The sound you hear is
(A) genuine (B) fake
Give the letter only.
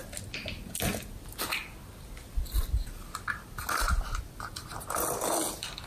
A